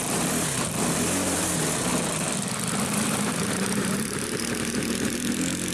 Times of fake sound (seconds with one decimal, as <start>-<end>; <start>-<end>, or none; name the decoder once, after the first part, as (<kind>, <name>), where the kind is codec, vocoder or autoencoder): 0.0-1.9 (vocoder, BigVGAN v2); 2.8-5.7